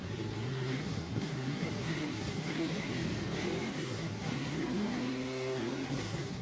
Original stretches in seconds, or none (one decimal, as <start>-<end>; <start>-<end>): 2.9-3.7